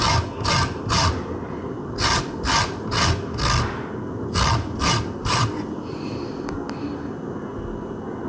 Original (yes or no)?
yes